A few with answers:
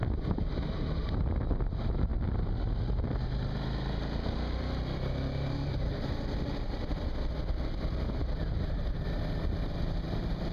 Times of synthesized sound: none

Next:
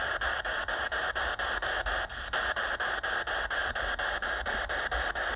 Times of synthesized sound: none

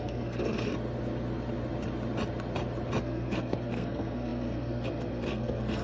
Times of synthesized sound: 0.0-0.7; 3.0-5.8

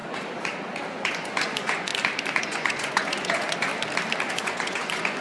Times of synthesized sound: 0.9-1.9; 2.4-3.7; 4.3-5.2

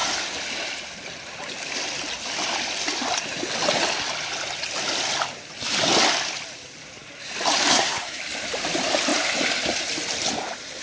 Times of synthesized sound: 7.7-8.2